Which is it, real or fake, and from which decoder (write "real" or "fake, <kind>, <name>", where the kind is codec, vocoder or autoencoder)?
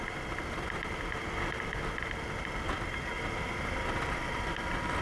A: real